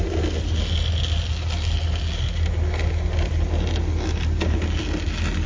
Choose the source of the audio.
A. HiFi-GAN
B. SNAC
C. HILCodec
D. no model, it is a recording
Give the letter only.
D